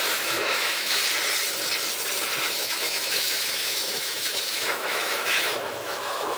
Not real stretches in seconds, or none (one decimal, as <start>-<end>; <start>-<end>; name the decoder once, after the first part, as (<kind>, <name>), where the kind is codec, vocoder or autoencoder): 0.0-1.0 (autoencoder, DAC-VAE); 2.5-6.4